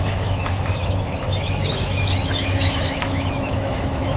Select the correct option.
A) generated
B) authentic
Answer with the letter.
A